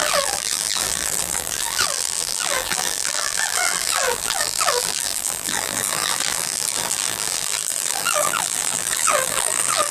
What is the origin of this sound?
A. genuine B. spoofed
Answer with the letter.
B